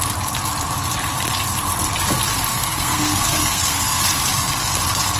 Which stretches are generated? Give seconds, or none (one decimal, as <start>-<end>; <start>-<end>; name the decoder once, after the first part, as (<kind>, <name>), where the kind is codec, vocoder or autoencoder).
2.5-4.0 (codec, SNAC)

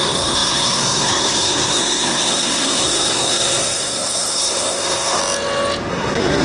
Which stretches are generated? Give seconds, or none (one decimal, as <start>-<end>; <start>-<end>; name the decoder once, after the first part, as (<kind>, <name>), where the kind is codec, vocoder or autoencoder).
0.0-5.2 (codec, SNAC); 5.9-6.4

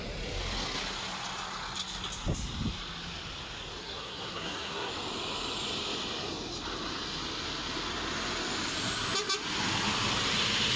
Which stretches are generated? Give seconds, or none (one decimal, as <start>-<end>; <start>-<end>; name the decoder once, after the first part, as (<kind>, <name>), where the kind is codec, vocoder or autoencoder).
3.8-4.9 (codec, SNAC)

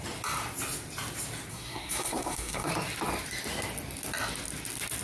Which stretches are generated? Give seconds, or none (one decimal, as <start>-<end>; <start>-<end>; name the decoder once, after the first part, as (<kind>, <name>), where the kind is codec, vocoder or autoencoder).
1.5-2.7 (codec, SNAC)

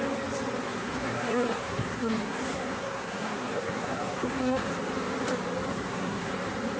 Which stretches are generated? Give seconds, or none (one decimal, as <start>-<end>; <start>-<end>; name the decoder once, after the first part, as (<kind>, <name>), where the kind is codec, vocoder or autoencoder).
0.6-4.7 (codec, SNAC); 5.7-6.3

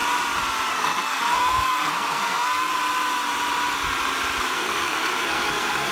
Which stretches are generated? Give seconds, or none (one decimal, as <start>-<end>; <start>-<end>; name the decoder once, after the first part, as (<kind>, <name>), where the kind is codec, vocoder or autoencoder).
0.7-2.7 (codec, SNAC); 4.4-5.9

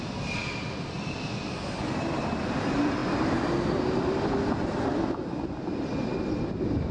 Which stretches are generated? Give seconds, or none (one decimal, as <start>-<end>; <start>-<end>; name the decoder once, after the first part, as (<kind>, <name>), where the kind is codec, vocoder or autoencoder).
none